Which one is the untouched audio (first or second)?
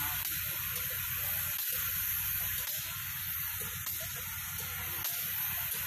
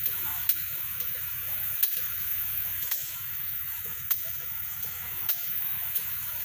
first